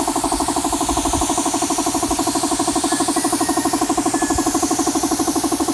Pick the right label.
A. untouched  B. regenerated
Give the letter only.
A